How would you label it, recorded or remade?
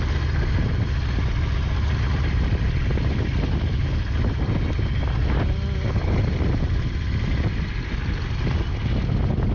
recorded